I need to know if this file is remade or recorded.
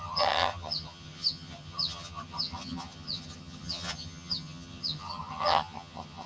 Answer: remade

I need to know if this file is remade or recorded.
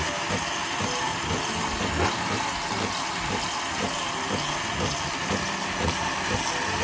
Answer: recorded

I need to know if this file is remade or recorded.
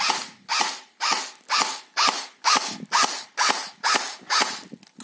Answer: recorded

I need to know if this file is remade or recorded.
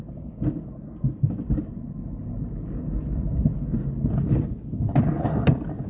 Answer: recorded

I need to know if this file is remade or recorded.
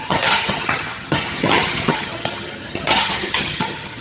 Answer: remade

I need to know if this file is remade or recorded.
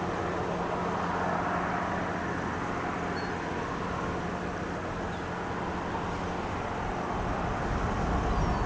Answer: recorded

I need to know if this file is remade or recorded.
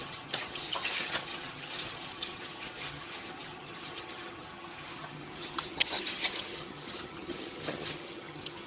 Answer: remade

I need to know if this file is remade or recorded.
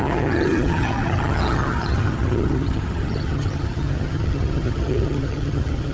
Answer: remade